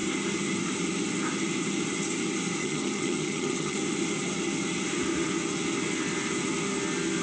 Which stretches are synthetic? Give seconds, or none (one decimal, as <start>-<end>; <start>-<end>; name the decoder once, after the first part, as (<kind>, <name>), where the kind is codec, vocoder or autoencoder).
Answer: 2.6-3.8 (vocoder, HiFi-GAN)